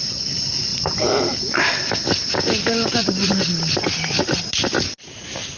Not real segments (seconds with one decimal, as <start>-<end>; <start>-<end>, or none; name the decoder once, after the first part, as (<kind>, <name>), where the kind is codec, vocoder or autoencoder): none